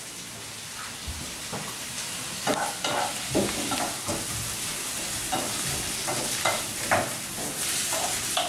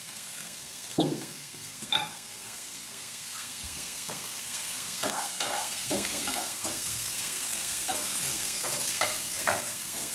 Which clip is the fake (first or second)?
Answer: second